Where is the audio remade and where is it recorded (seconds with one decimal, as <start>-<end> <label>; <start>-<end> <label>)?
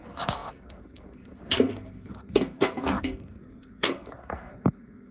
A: 0.0-5.1 remade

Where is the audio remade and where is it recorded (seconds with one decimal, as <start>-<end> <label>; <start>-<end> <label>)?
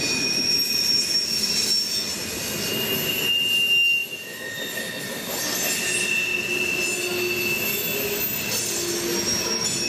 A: 0.0-9.9 recorded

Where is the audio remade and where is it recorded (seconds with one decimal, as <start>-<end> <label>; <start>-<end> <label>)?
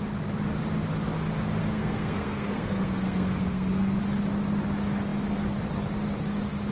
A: 0.0-1.6 recorded; 1.6-4.0 remade; 4.0-6.7 recorded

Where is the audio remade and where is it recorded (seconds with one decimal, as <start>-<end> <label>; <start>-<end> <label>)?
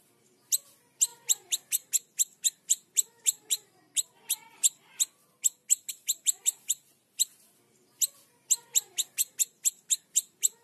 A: 0.0-10.6 recorded